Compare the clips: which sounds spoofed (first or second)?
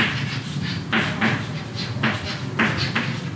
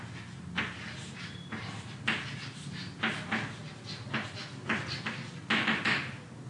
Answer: first